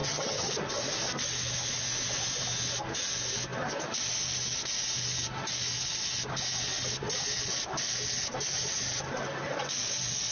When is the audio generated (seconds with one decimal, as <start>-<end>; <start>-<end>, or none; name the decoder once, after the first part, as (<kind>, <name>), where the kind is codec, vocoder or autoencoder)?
0.0-0.5 (vocoder, HiFi-GAN)